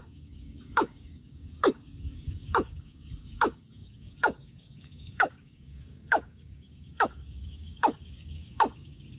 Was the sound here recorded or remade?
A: remade